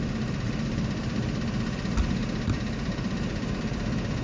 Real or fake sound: real